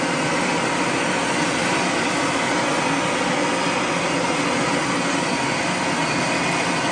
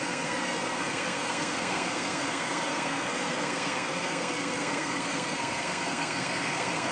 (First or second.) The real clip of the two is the first